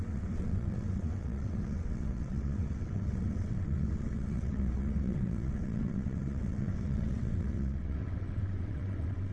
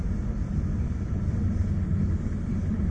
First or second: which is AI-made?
first